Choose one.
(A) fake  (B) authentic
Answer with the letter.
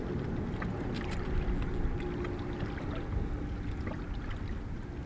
B